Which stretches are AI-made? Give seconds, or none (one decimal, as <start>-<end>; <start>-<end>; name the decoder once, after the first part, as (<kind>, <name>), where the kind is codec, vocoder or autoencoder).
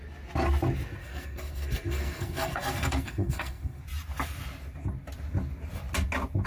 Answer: 1.0-3.8 (codec, SNAC)